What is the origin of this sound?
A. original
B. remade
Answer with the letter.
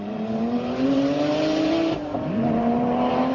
B